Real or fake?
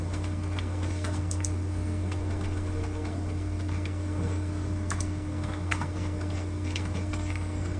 fake